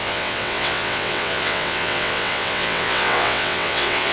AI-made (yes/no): yes